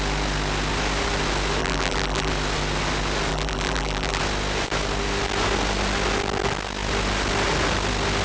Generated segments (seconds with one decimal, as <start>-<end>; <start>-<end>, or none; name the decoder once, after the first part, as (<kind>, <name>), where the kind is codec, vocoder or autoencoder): 1.6-2.3 (vocoder, BigVGAN v2); 3.3-4.2